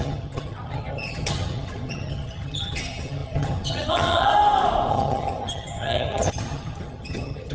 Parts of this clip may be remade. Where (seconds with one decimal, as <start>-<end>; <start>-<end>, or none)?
0.0-4.3; 4.9-7.5